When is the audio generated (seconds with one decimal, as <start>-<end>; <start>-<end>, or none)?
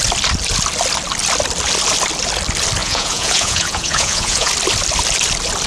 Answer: 2.8-4.5